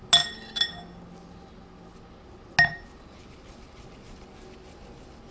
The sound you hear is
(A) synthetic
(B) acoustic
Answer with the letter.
B